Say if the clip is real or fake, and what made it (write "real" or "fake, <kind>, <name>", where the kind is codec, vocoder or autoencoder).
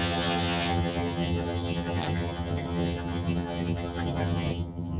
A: fake, vocoder, HiFi-GAN